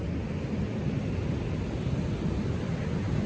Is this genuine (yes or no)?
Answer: yes